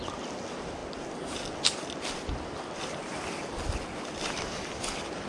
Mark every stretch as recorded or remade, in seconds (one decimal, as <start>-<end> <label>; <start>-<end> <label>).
0.0-5.3 recorded